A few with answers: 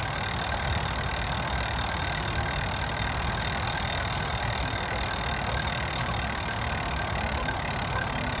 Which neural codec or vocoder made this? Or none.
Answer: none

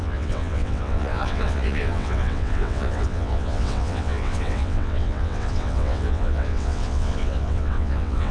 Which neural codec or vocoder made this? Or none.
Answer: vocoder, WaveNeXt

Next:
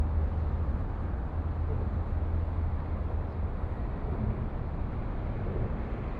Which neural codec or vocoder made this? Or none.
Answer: none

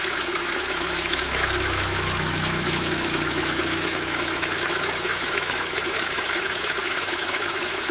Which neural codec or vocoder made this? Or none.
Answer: autoencoder, DAC-VAE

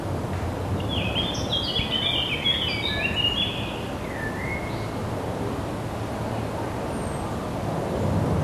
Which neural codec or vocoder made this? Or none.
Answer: none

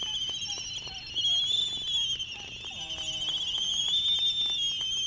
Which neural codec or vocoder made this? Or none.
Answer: none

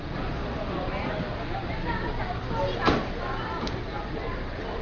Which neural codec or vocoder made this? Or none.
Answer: none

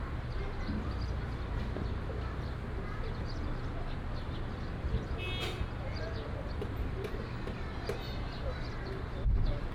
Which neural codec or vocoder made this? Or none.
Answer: none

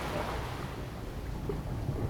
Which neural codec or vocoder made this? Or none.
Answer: none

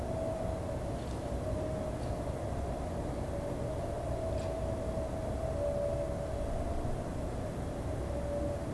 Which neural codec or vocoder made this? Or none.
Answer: none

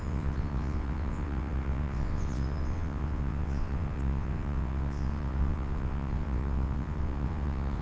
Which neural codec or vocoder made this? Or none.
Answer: vocoder, WaveNeXt